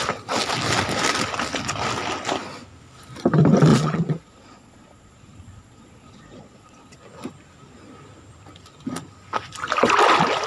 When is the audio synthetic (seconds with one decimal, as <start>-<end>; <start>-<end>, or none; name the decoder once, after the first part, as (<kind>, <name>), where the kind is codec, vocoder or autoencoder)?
3.7-7.0 (vocoder, Vocos)